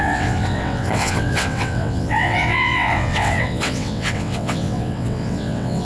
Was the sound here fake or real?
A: fake